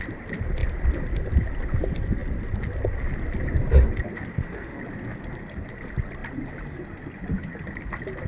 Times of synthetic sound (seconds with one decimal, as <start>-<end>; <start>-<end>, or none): 4.3-4.8